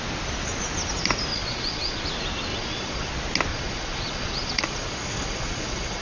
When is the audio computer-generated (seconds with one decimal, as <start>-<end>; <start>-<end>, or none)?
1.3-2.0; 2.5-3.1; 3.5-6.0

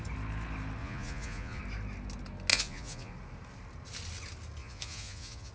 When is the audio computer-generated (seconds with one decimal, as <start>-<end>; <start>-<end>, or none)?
0.8-1.6; 2.5-3.1; 4.6-5.5

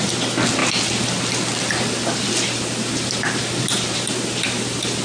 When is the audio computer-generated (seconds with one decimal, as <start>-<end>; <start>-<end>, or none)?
none

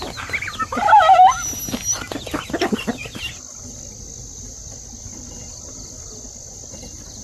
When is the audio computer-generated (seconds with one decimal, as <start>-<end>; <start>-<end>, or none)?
none

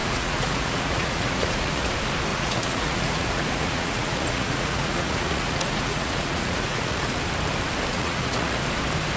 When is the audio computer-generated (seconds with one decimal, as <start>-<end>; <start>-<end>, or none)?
0.0-1.9; 2.3-7.2; 7.9-8.6

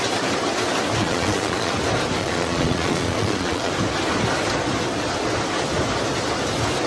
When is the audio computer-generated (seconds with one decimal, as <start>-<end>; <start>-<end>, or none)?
1.0-1.7; 2.2-3.7